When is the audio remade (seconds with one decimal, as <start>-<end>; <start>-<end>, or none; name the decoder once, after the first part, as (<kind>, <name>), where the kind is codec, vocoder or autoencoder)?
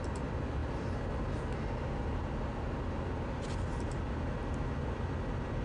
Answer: none